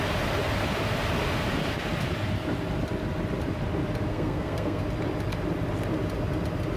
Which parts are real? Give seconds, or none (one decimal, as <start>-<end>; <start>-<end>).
0.0-4.1; 4.8-6.8